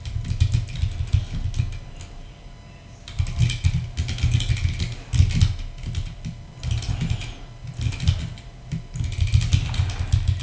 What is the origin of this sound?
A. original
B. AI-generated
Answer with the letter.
A